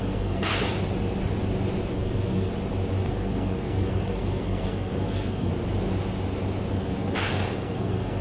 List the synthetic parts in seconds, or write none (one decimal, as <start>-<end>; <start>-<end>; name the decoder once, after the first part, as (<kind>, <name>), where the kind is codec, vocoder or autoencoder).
0.0-0.5 (codec, SNAC); 1.9-2.5; 3.1-5.5; 6.7-8.2